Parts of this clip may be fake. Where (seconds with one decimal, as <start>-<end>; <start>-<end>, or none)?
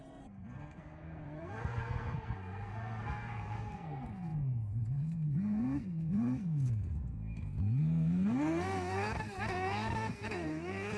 0.0-11.0